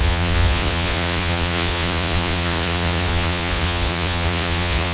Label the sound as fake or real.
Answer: fake